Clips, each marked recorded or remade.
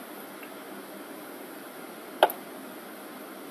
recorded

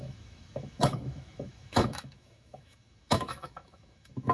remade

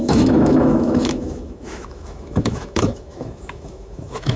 remade